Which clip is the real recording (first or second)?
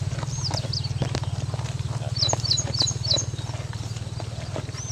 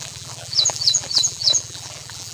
first